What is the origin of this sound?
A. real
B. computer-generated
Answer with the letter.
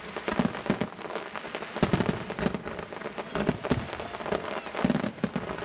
A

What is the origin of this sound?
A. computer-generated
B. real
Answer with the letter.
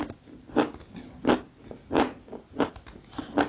B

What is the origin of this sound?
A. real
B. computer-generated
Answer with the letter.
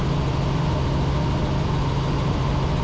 A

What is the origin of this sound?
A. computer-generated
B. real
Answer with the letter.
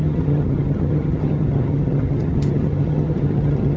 A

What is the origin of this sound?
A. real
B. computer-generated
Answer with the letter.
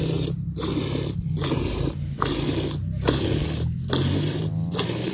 A